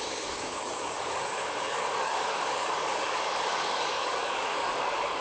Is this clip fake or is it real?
fake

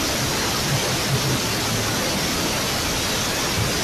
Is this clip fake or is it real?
real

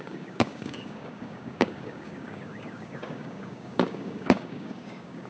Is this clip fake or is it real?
fake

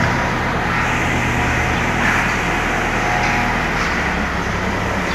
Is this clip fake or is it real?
real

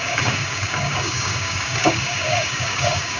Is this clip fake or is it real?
fake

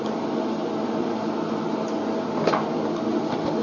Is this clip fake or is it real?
real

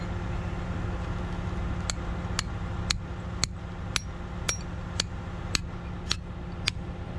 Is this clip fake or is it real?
real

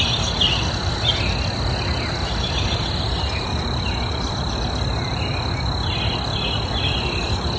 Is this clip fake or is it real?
real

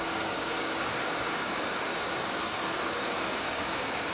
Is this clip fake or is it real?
fake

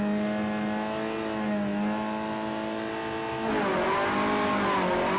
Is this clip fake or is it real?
real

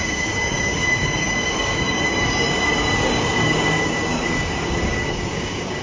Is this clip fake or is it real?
fake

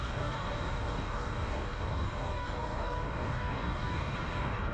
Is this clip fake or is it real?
fake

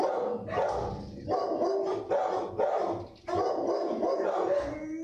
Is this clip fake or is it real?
real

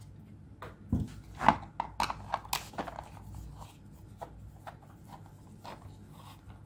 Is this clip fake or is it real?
real